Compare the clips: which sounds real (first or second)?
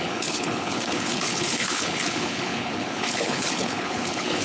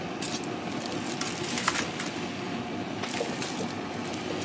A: second